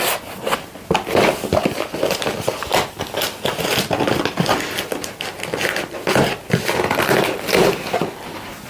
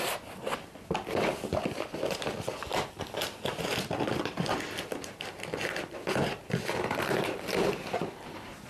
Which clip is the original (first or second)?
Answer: first